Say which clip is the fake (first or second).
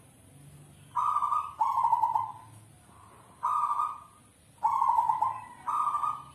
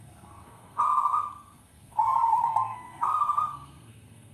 second